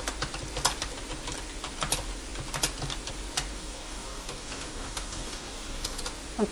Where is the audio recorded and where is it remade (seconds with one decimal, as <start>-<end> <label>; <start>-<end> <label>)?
0.0-3.5 recorded; 3.5-6.0 remade; 6.0-6.5 recorded